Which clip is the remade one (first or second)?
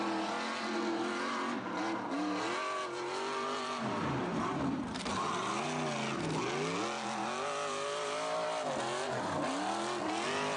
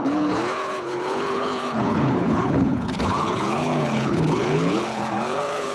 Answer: second